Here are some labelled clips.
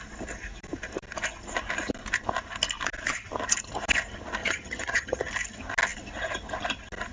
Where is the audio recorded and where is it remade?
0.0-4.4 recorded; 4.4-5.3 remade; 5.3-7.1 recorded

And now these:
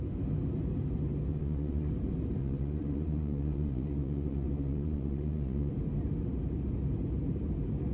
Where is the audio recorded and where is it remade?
0.0-1.3 recorded; 1.3-1.9 remade; 1.9-2.4 recorded; 2.4-5.7 remade; 5.7-7.9 recorded